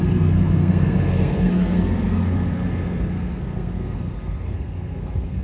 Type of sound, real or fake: fake